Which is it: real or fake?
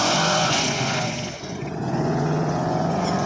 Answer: fake